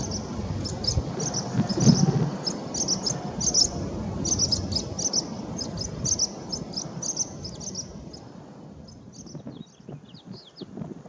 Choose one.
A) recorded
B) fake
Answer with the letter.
A